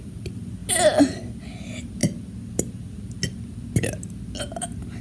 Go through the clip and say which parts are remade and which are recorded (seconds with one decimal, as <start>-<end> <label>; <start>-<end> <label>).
0.0-5.0 recorded